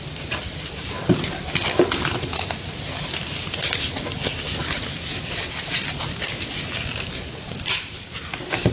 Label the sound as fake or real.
real